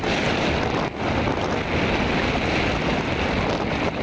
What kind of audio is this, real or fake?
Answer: real